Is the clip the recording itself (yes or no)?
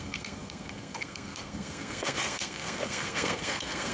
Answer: no